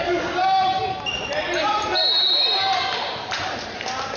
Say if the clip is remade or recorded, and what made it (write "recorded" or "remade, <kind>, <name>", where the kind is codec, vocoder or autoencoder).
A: recorded